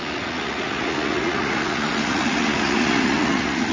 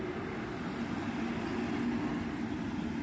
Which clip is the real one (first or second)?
second